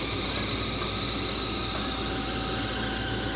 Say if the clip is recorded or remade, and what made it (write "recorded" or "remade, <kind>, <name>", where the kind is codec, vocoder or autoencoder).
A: recorded